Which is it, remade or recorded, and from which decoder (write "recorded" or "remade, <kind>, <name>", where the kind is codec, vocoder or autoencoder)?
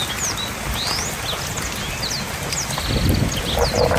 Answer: recorded